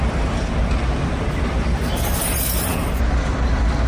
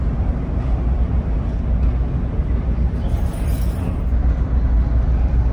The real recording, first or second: second